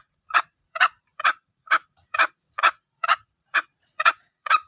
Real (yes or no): no